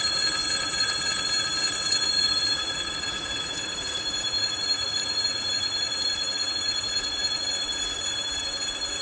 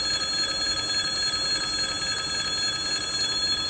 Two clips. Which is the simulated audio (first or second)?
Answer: first